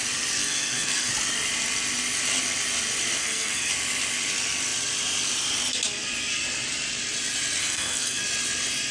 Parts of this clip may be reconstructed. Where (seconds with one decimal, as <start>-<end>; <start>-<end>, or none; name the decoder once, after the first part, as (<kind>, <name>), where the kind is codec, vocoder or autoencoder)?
0.4-1.1 (codec, SNAC); 3.2-3.7; 7.6-8.2